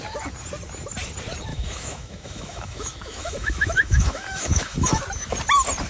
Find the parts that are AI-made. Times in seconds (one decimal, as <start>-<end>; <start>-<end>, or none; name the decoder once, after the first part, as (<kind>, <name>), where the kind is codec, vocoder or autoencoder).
1.5-5.0 (autoencoder, DAC-VAE)